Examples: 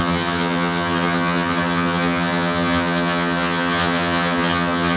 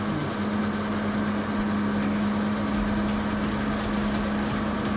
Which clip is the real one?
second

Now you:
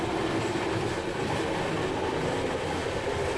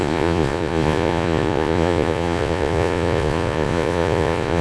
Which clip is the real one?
first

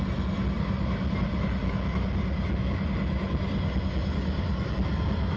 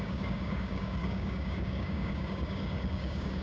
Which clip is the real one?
first